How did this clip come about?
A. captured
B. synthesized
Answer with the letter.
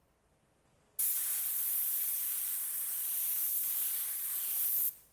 A